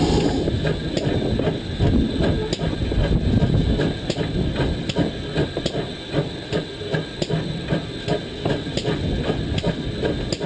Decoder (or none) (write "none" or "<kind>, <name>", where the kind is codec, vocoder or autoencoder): none